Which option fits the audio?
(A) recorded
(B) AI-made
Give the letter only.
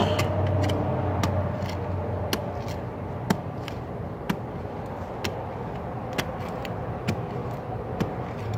A